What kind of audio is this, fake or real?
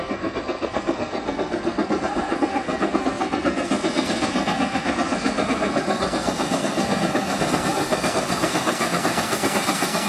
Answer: fake